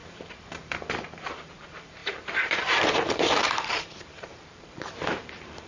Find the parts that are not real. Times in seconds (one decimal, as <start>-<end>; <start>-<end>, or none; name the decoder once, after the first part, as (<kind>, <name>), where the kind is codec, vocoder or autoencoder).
0.0-5.7 (vocoder, BigVGAN v2)